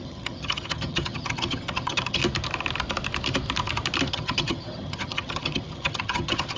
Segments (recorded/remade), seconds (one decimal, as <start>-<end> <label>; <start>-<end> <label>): 0.0-2.2 remade; 2.2-4.1 recorded; 4.1-6.6 remade